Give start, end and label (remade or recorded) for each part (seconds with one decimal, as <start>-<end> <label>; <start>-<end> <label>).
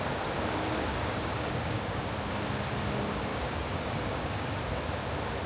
0.0-0.9 recorded; 0.9-2.0 remade; 2.0-3.3 recorded; 3.3-4.6 remade; 4.6-5.5 recorded